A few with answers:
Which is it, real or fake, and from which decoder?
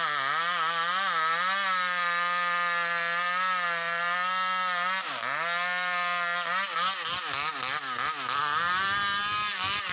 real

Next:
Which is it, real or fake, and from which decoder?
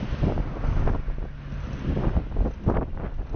real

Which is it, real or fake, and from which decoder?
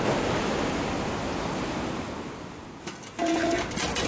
real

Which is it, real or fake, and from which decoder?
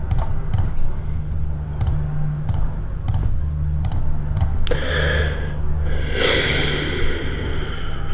real